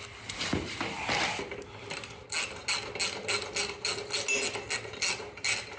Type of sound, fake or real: real